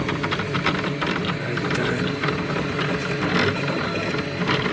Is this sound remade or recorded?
recorded